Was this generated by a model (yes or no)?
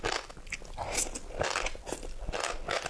no